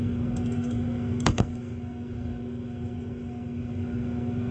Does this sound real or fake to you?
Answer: fake